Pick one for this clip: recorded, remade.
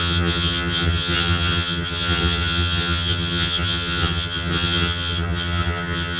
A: remade